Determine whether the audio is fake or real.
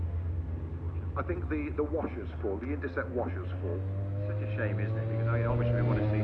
real